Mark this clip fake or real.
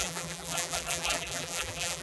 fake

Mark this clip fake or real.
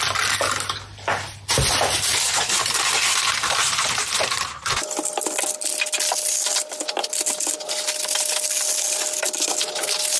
real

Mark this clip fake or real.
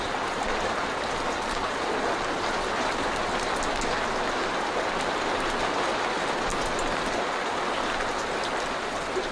real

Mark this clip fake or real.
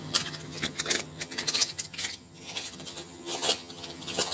fake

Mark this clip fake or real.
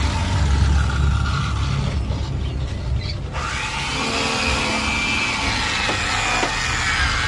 real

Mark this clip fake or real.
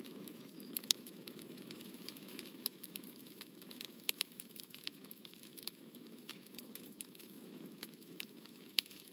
fake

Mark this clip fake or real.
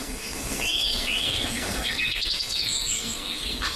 fake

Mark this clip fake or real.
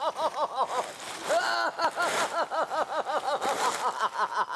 real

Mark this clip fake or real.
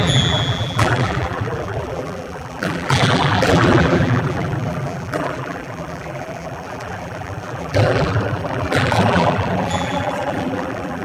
fake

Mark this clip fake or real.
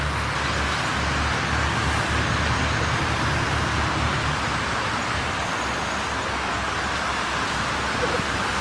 real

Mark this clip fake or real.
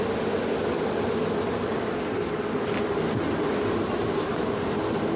real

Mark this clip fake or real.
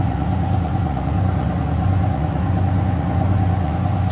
fake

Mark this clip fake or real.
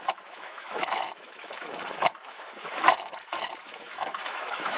fake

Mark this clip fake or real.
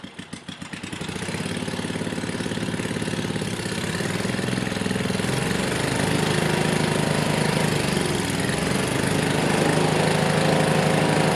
real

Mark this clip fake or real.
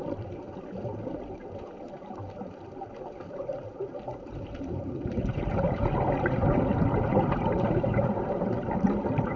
fake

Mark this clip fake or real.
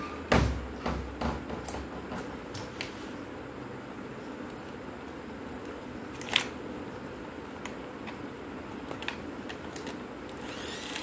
real